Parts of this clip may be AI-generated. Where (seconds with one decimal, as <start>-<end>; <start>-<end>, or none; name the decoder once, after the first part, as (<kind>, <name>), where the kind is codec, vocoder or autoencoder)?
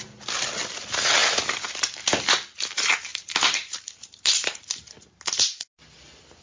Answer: 1.2-2.2 (vocoder, BigVGAN v2); 3.1-4.9